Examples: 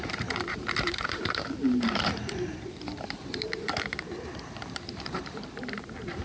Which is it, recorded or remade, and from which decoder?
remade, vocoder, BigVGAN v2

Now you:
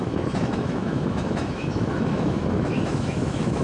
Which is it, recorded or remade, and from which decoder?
remade, autoencoder, DAC-VAE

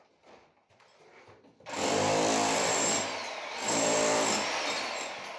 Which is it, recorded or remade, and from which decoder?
recorded